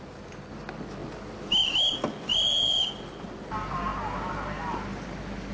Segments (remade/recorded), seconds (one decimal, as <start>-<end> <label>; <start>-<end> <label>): 0.0-5.5 recorded